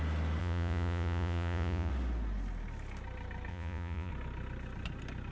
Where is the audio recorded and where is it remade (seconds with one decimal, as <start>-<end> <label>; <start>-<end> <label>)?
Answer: 0.0-0.4 recorded; 0.4-1.9 remade; 1.9-3.5 recorded; 3.5-4.1 remade; 4.1-5.3 recorded